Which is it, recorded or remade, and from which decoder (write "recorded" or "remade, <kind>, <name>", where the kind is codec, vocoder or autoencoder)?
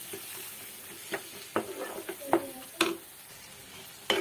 recorded